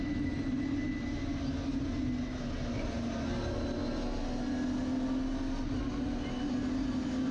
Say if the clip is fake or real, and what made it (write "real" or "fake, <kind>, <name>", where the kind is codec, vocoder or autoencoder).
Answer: real